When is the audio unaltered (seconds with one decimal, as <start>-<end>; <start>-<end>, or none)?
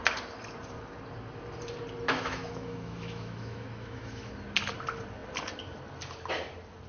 0.0-2.1; 4.3-6.9